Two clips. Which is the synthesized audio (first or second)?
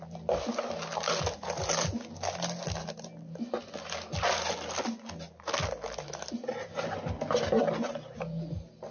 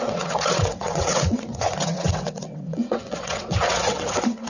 second